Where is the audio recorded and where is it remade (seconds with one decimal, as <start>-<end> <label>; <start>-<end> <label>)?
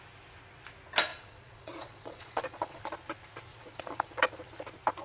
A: 0.0-1.1 recorded; 1.1-2.8 remade; 2.8-3.5 recorded; 3.5-4.2 remade; 4.2-5.0 recorded